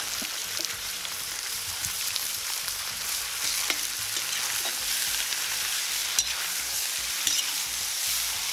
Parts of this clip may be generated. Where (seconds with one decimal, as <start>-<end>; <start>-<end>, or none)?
0.4-3.2